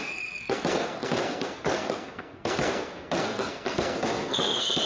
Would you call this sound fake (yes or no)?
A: yes